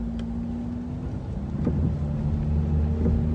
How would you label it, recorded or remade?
recorded